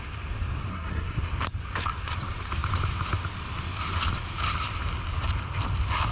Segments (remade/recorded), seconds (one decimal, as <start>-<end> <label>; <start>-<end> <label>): 0.0-0.7 recorded; 0.7-1.2 remade; 1.2-6.1 recorded